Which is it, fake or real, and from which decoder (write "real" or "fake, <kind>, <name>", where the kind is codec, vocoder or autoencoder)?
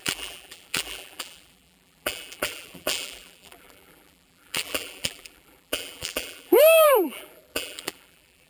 fake, vocoder, BigVGAN v2